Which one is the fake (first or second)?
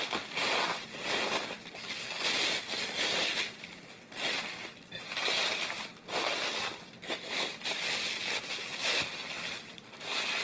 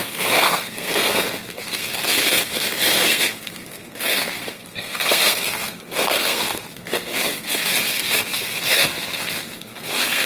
second